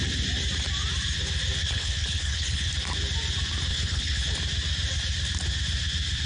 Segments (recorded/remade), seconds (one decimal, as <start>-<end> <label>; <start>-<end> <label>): 0.0-1.6 recorded; 1.6-2.7 remade; 2.7-3.7 recorded; 3.7-4.2 remade; 4.2-6.3 recorded